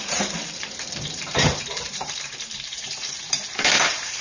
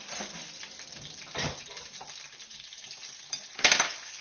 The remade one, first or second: first